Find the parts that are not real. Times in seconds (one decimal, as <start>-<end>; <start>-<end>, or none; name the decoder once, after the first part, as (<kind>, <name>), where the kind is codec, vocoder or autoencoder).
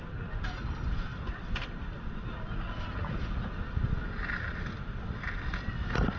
none